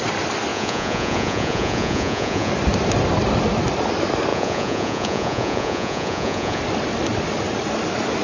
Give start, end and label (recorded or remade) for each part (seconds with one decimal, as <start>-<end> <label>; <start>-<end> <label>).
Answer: 0.0-0.5 recorded; 0.5-2.5 remade; 2.5-4.3 recorded; 4.3-6.6 remade; 6.6-8.2 recorded